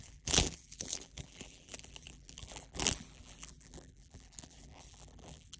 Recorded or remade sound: remade